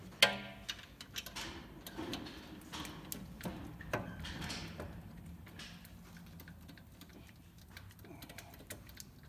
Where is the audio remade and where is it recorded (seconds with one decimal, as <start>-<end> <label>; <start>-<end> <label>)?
0.0-9.3 recorded